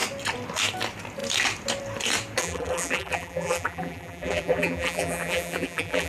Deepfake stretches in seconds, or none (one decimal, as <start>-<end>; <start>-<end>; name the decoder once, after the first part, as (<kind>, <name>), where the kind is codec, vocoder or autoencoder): 2.4-6.1 (vocoder, BigVGAN v2)